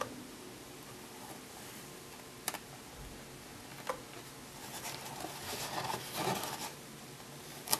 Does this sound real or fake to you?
real